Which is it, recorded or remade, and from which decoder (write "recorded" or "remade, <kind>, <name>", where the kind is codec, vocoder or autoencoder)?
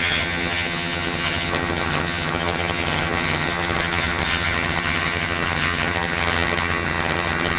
remade, vocoder, HiFi-GAN